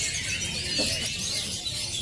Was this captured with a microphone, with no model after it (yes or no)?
yes